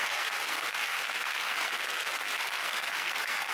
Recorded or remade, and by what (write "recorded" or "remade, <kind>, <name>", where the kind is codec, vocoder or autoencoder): remade, codec, SNAC